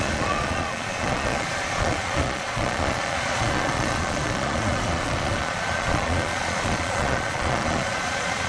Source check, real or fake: fake